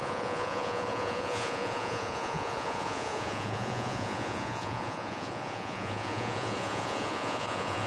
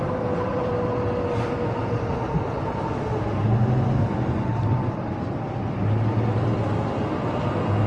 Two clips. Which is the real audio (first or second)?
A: second